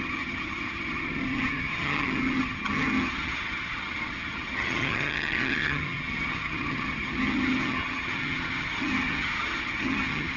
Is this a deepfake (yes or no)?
yes